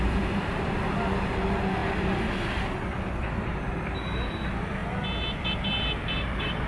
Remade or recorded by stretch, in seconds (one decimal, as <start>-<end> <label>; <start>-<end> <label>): 0.0-1.8 remade; 1.8-3.4 recorded; 3.4-4.8 remade; 4.8-5.4 recorded; 5.4-6.7 remade